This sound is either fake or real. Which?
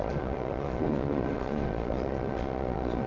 fake